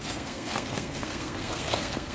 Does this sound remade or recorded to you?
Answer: remade